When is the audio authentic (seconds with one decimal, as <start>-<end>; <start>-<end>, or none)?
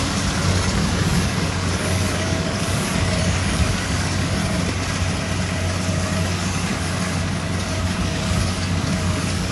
4.4-5.9